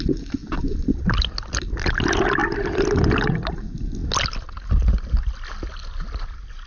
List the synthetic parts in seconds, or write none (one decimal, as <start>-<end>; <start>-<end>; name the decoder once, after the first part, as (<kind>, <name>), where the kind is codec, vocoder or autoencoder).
none